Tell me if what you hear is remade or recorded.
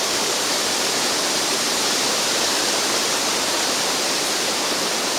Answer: remade